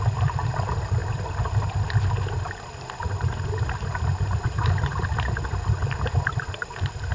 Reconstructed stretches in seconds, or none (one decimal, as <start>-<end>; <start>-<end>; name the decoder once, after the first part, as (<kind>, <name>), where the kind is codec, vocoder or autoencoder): none